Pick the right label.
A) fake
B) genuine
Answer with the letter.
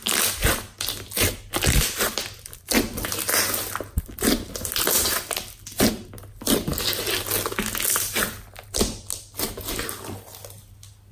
B